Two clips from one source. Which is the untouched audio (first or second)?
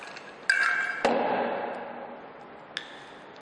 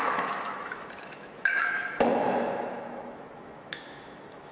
first